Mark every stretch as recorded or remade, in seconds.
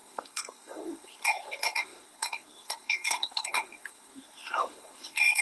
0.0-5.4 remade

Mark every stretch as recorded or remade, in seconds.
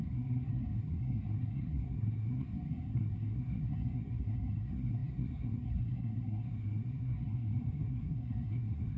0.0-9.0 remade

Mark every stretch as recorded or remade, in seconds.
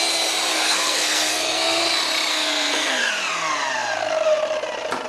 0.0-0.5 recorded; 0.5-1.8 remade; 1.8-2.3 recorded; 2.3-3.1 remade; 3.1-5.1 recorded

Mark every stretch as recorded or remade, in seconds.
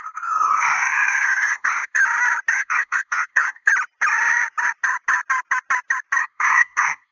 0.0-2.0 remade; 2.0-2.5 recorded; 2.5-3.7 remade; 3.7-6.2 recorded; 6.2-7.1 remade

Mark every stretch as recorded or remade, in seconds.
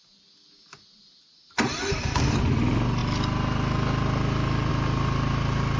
0.0-5.8 recorded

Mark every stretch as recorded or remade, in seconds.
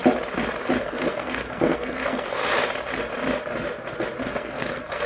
0.0-0.8 recorded; 0.8-2.4 remade; 2.4-4.2 recorded; 4.2-5.1 remade